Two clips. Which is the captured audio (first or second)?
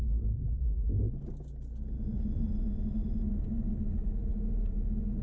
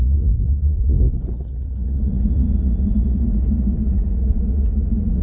first